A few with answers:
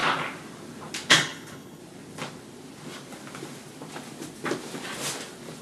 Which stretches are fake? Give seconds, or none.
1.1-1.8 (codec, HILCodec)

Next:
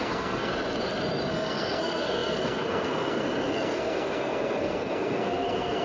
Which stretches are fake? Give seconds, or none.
0.0-0.5 (codec, SNAC); 1.3-5.8

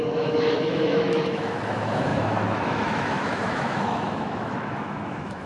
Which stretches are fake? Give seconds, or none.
0.0-5.5 (autoencoder, DAC-VAE)

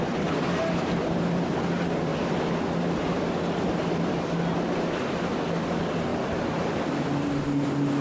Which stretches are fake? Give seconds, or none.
6.1-6.6 (vocoder, BigVGAN v2)

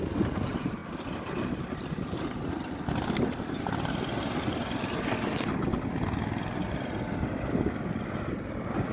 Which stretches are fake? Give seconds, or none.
none

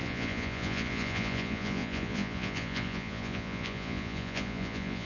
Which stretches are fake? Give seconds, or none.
0.0-5.1 (vocoder, Vocos)

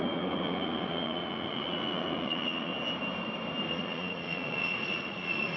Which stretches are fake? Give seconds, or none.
0.0-2.7 (vocoder, Vocos); 3.7-5.6